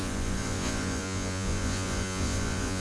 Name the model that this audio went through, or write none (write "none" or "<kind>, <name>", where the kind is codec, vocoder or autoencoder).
vocoder, Vocos